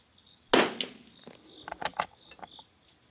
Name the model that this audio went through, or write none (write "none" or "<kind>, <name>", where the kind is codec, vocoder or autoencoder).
none